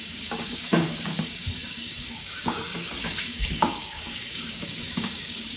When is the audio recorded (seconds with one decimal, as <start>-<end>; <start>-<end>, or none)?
none